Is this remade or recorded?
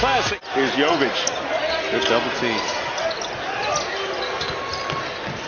recorded